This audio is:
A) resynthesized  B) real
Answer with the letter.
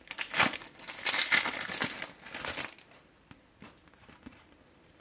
B